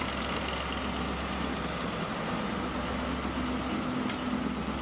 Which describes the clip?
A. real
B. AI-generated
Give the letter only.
A